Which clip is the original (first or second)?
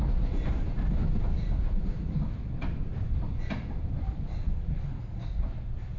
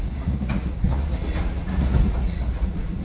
first